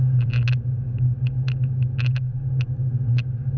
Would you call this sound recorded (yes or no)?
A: yes